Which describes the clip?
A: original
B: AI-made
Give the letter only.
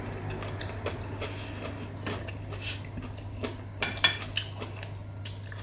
A